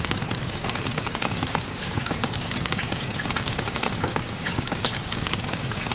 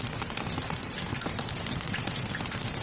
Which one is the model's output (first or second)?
first